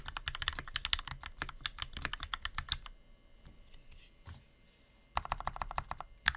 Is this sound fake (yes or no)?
no